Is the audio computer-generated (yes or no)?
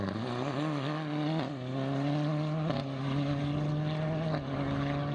no